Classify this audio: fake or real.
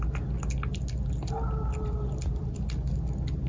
real